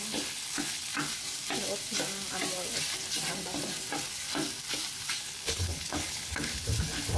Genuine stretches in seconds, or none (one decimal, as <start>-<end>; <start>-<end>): 0.9-5.2